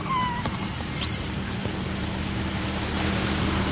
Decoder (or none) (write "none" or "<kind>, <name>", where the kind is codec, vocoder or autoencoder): vocoder, BigVGAN v2